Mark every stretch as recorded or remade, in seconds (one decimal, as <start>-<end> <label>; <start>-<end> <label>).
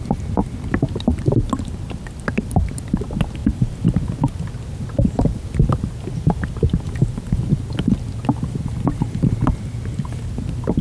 0.0-10.8 recorded